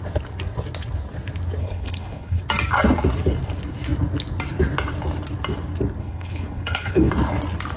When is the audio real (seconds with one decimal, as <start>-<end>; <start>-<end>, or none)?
0.0-1.6; 2.4-6.0; 7.1-7.8